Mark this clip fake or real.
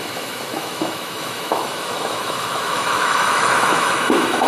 fake